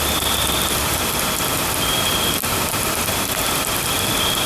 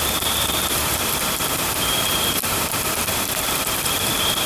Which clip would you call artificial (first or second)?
second